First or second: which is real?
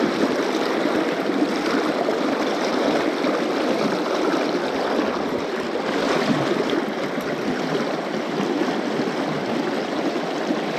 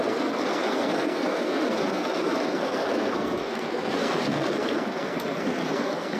first